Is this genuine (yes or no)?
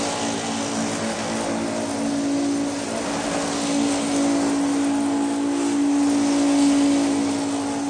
yes